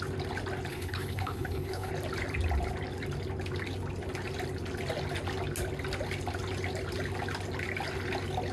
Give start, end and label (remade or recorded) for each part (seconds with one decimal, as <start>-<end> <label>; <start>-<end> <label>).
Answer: 0.0-0.7 recorded; 0.7-1.9 remade; 1.9-8.5 recorded